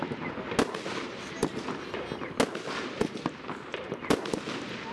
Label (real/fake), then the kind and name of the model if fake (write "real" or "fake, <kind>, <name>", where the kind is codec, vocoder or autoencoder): real